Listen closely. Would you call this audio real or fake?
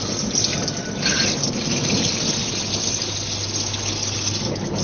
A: real